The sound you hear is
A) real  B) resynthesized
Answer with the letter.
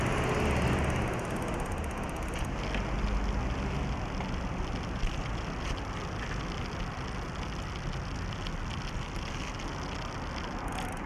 A